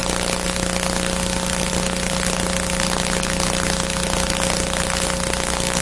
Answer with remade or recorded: recorded